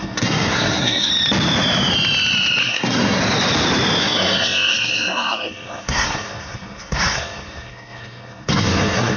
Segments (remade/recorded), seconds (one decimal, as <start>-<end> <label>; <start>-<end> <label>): 0.0-1.1 remade; 1.1-2.6 recorded; 2.6-3.2 remade; 3.2-4.0 recorded; 4.0-9.2 remade